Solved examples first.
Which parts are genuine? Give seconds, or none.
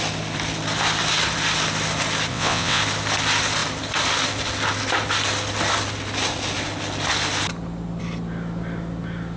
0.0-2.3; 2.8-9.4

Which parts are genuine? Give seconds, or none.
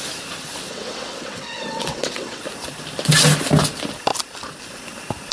0.0-0.7; 2.4-5.3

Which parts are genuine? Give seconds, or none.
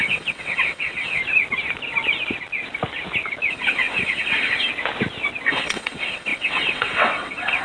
1.2-3.5; 4.7-5.5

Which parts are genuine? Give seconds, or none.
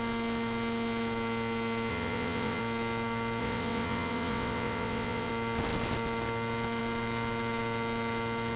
0.0-1.9; 2.6-3.4; 5.3-8.6